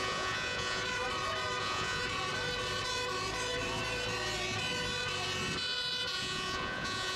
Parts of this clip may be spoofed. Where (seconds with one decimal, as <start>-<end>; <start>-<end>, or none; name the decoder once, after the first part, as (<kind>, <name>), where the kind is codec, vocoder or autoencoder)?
0.0-0.8 (vocoder, Vocos); 1.6-2.0; 6.2-7.2